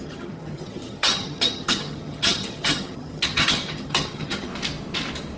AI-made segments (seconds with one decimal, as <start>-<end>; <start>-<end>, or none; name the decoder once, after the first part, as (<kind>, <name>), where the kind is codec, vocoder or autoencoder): 0.0-4.5 (vocoder, HiFi-GAN)